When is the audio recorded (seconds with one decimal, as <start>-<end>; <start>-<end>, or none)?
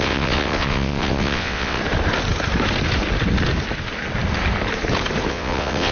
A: 1.8-5.3